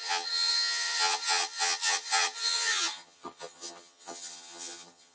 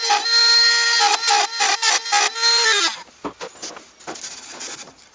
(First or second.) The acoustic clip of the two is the second